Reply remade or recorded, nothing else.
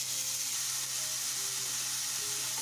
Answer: recorded